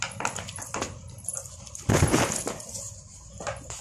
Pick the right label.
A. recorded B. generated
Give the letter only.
A